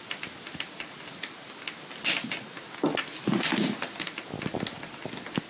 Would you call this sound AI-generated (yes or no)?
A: no